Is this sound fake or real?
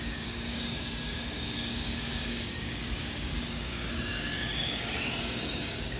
fake